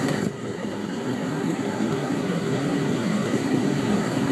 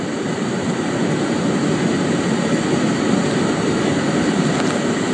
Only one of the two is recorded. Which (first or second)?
second